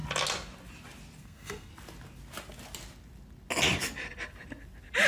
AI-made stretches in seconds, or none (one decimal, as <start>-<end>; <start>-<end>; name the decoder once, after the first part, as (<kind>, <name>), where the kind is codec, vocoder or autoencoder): 1.2-1.7 (codec, SNAC)